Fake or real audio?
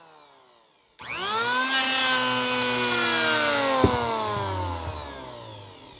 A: real